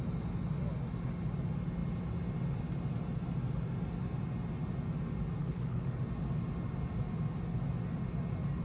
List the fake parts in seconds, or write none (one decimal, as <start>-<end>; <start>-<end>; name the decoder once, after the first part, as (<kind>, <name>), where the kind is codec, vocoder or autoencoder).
5.4-6.0 (codec, HILCodec)